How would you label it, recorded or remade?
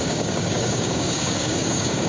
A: remade